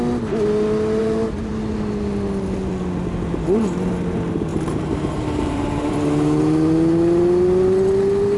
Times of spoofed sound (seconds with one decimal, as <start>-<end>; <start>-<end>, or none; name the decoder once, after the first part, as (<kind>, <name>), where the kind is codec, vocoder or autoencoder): 1.0-1.5 (vocoder, BigVGAN v2); 4.5-5.9